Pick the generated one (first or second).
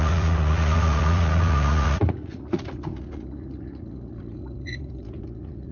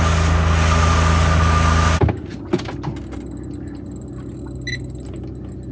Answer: first